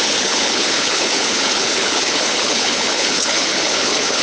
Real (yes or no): no